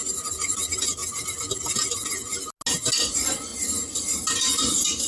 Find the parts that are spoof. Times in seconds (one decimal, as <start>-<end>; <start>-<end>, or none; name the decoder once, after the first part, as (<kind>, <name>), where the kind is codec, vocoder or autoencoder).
none